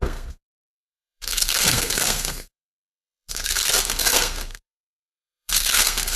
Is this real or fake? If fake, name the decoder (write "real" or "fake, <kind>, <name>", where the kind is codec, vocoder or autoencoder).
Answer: fake, codec, SNAC